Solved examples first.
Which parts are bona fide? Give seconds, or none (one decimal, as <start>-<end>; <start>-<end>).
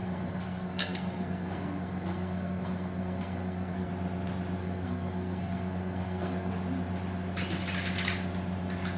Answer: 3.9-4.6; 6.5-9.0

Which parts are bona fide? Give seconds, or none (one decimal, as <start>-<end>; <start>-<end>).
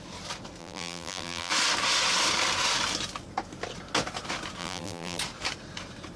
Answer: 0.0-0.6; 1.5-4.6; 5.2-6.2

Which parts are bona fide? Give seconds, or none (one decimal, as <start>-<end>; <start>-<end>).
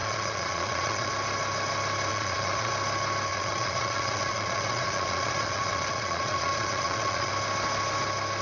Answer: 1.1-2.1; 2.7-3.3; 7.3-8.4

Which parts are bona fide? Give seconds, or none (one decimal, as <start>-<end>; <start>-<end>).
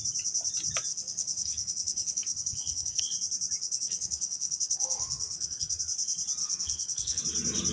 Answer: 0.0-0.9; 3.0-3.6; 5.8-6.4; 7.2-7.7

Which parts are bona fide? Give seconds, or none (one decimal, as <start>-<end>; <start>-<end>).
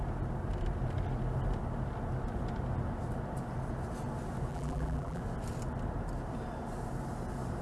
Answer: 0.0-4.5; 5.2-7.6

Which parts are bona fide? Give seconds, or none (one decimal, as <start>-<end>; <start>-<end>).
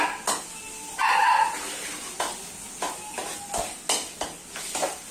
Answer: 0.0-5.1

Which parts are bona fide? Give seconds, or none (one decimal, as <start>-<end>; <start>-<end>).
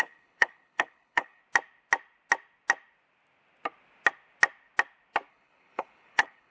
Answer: 1.4-5.3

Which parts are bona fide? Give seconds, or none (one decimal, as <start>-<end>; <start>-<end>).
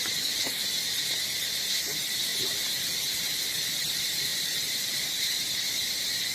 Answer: 0.0-6.3